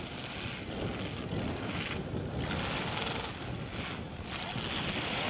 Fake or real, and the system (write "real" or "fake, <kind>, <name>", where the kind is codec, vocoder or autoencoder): real